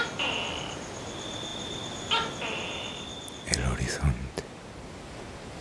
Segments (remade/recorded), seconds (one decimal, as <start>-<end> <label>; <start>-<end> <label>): 0.0-5.6 recorded